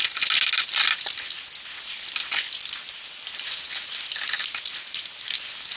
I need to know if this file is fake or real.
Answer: real